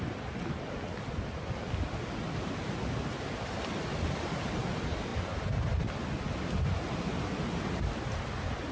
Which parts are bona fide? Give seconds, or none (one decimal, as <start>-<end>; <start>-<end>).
0.0-8.7